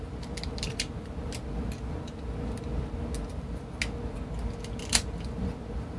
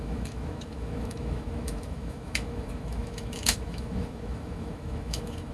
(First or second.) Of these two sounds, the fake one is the second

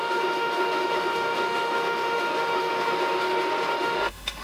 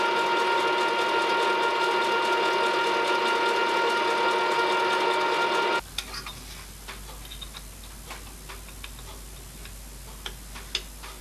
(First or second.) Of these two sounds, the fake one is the first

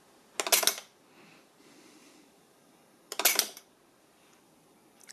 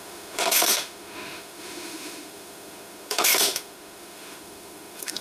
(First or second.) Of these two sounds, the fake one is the second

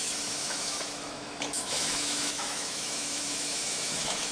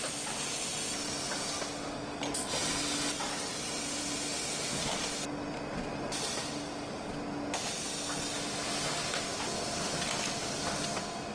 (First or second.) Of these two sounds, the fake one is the first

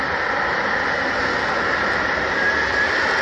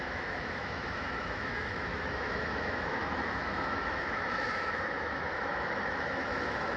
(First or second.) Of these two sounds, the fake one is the second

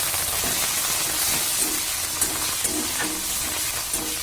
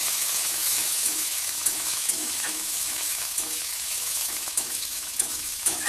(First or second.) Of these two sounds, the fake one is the second